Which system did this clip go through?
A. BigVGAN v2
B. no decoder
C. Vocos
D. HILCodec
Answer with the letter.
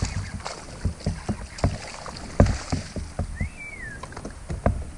B